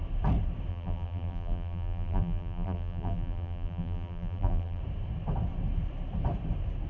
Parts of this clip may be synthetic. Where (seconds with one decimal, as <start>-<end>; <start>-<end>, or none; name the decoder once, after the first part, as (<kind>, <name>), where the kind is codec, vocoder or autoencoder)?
0.7-4.8 (vocoder, BigVGAN v2)